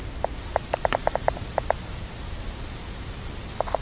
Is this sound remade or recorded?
recorded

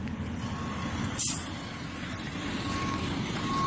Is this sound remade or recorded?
recorded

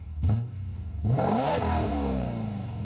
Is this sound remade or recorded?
remade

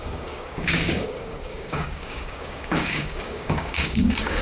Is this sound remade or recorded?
remade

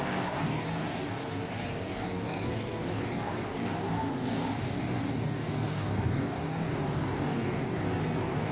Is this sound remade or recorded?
remade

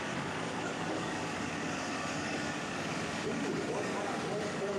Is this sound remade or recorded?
remade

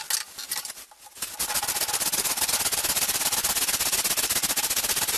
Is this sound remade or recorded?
recorded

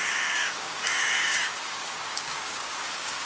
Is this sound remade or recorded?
remade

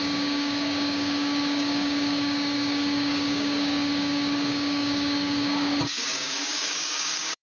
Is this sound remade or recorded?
remade